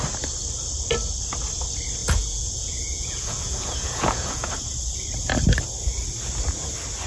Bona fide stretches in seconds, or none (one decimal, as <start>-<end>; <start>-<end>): 0.0-2.0; 4.5-7.1